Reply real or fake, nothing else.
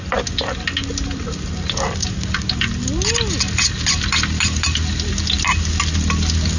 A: real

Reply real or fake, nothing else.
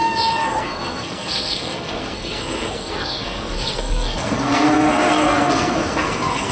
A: fake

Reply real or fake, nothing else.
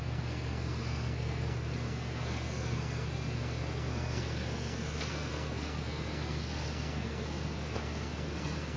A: fake